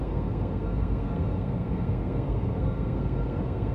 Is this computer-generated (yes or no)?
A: yes